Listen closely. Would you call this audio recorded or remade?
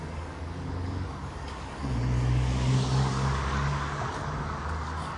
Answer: remade